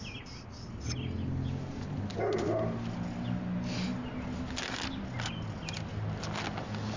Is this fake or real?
real